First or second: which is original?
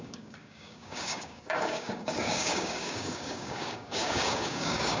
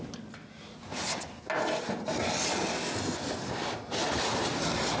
second